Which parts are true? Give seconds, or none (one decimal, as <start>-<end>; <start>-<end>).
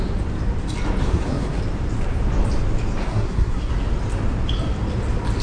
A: 0.0-1.0; 1.6-3.0; 3.7-5.4